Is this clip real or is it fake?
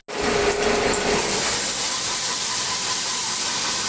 real